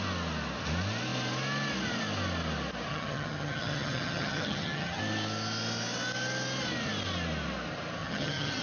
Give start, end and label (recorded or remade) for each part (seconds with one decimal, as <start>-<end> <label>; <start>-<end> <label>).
0.0-2.9 recorded; 2.9-5.0 remade; 5.0-8.0 recorded; 8.0-8.6 remade